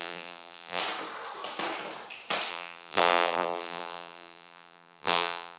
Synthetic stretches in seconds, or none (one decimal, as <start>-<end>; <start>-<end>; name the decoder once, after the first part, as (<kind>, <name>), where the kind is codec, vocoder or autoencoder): 0.0-0.8 (vocoder, BigVGAN v2); 2.5-5.6